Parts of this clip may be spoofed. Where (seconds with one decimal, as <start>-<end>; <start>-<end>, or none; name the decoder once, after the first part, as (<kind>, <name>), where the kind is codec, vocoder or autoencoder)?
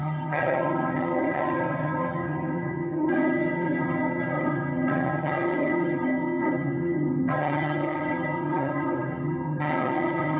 0.0-10.4 (vocoder, HiFi-GAN)